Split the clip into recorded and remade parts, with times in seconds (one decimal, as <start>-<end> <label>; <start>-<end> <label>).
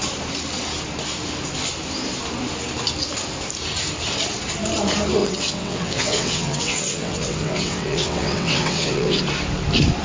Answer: 0.0-5.2 recorded; 5.2-9.2 remade; 9.2-10.0 recorded